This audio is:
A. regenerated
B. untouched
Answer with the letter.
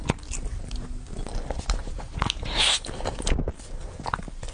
B